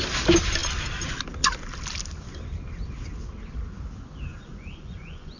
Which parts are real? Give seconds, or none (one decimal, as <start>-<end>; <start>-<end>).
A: 0.0-4.3